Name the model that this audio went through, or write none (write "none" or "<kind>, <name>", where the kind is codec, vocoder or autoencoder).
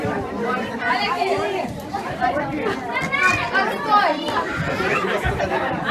vocoder, BigVGAN v2